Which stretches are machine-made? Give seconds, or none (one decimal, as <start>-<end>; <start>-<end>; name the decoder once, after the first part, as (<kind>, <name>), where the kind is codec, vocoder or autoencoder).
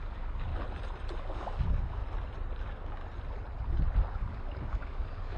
0.0-0.5 (codec, DAC); 1.2-2.0; 2.6-3.0; 4.1-5.4